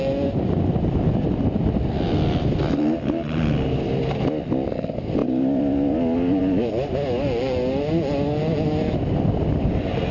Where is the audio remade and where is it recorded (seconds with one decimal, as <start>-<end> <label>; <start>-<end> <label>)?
0.0-10.1 recorded